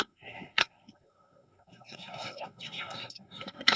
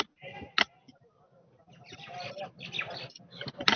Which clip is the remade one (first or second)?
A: first